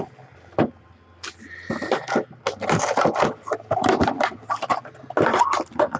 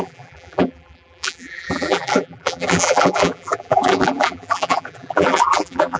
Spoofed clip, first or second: second